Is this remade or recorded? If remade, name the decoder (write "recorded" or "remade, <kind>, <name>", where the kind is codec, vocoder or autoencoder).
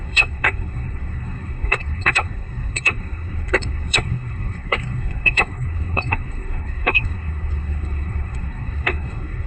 remade, codec, SNAC